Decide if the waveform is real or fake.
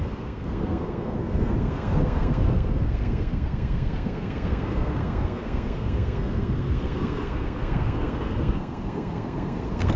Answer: fake